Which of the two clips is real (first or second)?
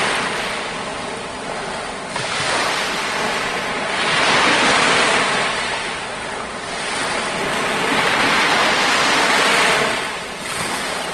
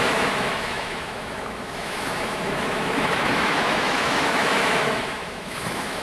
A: first